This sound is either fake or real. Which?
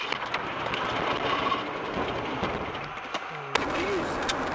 real